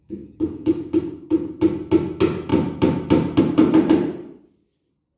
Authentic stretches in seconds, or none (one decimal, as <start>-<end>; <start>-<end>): 1.5-5.2